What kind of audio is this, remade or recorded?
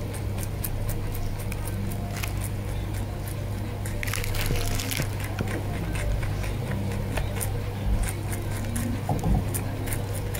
recorded